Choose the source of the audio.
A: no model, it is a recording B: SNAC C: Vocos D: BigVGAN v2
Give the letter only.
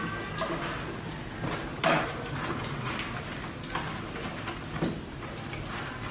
A